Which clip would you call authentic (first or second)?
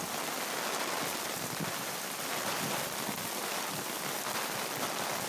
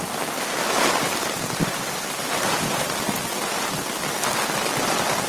first